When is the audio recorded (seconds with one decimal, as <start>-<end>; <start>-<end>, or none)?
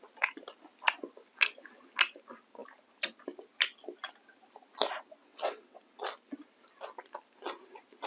0.0-5.2; 6.0-8.1